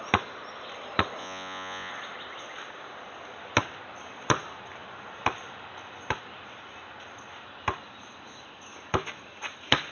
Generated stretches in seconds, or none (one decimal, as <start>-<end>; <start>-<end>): 1.2-1.9